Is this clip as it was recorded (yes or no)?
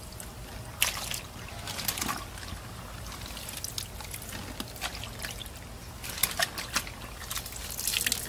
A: yes